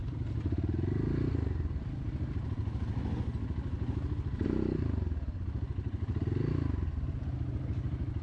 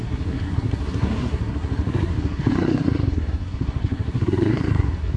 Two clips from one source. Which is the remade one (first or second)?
second